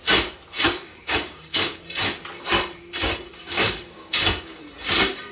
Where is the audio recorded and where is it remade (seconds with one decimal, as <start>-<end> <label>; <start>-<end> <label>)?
0.0-0.9 recorded; 0.9-1.8 remade; 1.8-3.4 recorded; 3.4-4.6 remade; 4.6-5.3 recorded